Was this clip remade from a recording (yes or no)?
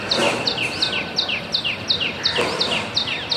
no